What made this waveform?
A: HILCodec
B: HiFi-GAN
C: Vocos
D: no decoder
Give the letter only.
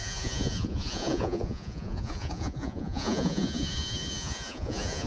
C